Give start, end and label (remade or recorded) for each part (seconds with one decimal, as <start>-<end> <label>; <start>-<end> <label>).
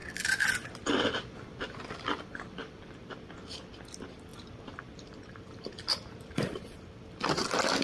0.0-3.2 remade; 3.2-4.3 recorded; 4.3-6.4 remade; 6.4-7.8 recorded